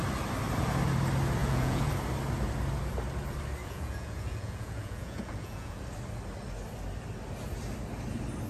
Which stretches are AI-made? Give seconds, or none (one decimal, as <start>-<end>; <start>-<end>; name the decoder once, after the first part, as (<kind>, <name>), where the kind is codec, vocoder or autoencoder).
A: 1.4-1.9 (vocoder, Vocos); 3.6-5.8